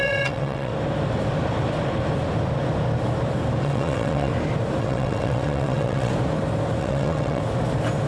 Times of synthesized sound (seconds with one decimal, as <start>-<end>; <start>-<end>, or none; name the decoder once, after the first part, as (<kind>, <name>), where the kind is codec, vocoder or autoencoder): 0.0-0.7 (vocoder, WaveNeXt); 3.6-4.3; 4.8-6.1; 6.8-7.4